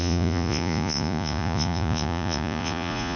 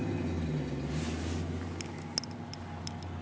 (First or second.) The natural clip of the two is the second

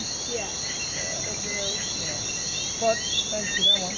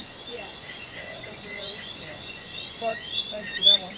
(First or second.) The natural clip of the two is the first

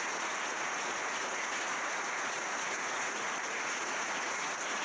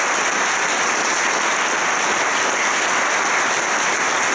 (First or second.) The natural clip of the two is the second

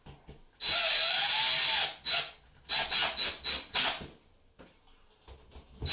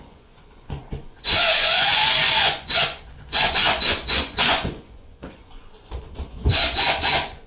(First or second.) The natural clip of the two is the first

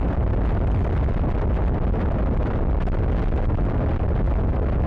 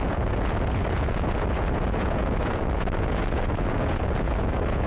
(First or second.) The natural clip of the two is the first